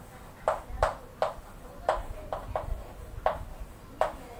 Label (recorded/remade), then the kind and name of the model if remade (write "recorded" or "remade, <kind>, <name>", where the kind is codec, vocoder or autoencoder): recorded